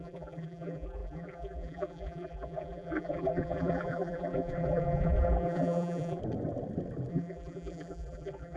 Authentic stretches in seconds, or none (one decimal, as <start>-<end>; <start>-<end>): 6.2-7.1